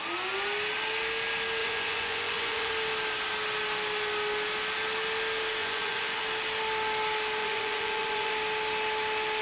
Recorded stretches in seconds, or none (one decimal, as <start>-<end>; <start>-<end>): 0.0-1.6; 2.7-5.6; 6.2-7.4; 8.3-9.4